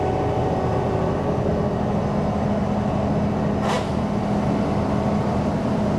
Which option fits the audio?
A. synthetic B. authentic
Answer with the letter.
B